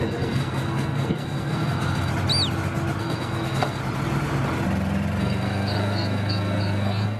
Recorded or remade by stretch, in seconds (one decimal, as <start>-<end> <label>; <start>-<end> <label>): 0.0-2.1 remade; 2.1-3.0 recorded; 3.0-3.8 remade; 3.8-5.2 recorded; 5.2-7.2 remade